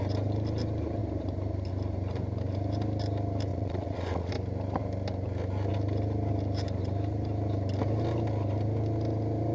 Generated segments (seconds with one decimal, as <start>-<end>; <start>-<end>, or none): 3.5-4.3

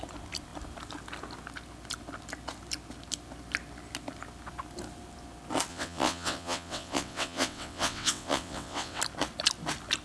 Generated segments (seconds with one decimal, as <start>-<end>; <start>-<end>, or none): 5.7-9.0

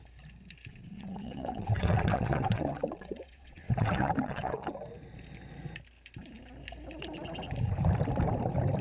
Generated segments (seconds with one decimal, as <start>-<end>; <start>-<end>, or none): 0.7-4.7